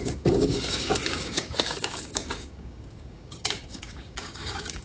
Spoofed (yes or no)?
yes